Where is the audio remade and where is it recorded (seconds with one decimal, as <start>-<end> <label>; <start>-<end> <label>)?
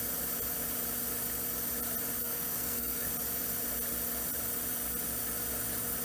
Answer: 0.0-2.2 recorded; 2.2-3.1 remade; 3.1-6.0 recorded